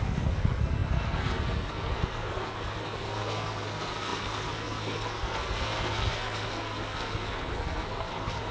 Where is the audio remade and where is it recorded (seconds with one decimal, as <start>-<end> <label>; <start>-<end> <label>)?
0.0-8.5 remade